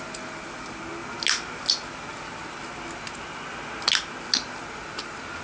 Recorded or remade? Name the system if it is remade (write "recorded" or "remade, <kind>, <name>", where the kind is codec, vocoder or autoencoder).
recorded